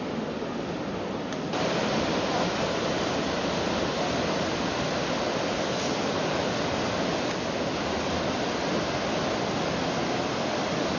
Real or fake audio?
real